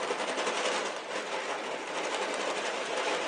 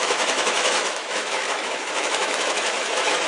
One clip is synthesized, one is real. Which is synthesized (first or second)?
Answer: second